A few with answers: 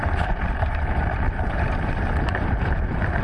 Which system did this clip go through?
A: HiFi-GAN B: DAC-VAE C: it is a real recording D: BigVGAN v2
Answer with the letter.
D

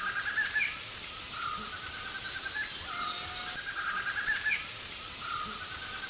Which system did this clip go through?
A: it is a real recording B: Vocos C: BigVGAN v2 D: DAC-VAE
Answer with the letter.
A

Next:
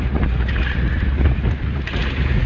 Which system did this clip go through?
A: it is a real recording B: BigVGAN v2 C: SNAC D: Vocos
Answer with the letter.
D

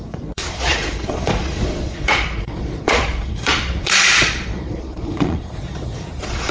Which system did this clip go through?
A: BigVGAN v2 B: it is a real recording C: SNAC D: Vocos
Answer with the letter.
D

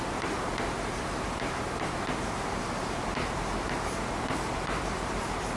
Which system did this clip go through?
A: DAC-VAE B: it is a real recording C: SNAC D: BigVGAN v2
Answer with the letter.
D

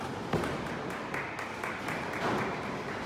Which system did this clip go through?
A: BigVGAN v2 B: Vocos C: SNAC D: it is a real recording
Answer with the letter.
D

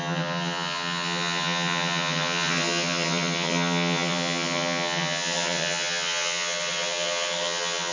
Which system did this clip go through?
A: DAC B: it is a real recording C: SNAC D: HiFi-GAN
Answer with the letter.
D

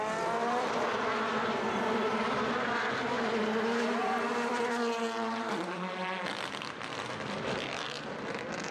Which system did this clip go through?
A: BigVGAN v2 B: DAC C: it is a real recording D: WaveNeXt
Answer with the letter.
A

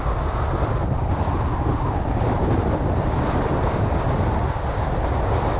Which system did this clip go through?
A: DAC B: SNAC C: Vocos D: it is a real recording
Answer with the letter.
D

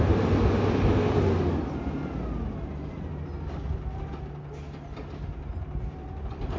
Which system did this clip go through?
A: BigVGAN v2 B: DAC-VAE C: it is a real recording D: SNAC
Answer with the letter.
C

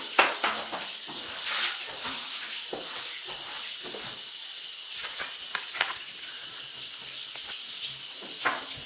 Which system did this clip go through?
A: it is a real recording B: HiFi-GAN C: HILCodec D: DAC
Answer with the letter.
A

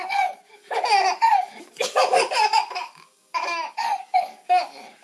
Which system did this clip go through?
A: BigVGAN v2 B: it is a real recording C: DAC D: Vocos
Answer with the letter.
C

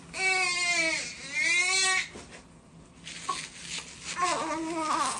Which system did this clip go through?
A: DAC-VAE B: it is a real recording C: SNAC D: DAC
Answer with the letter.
B